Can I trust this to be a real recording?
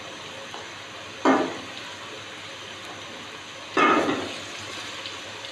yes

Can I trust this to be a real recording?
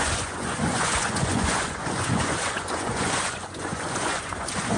no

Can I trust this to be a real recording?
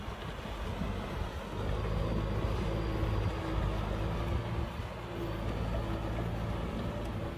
yes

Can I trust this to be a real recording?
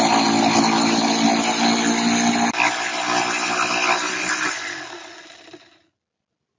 yes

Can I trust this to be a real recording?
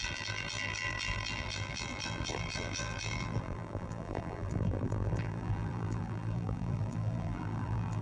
no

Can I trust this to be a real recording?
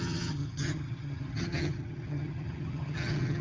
no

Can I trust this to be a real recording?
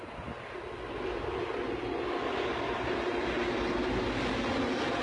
yes